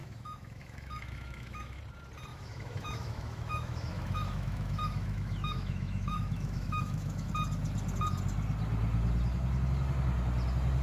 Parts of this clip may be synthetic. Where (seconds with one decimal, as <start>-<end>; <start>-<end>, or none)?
0.0-1.8; 2.3-7.3